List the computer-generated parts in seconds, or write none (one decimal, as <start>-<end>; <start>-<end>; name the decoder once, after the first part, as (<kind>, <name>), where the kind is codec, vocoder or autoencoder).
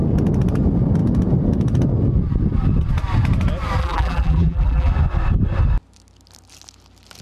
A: 3.8-4.9 (vocoder, BigVGAN v2)